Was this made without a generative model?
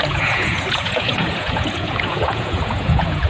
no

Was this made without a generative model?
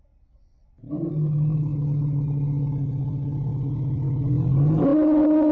yes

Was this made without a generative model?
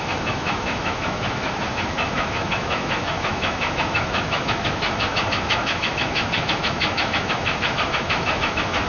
no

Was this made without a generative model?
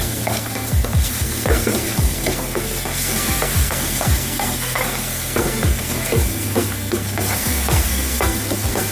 no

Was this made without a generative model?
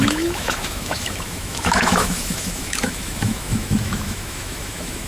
no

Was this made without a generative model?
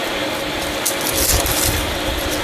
yes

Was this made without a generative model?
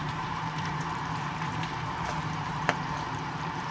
no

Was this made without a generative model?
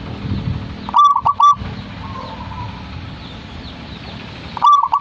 yes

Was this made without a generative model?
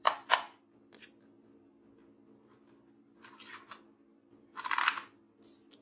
yes